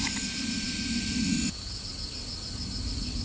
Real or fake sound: real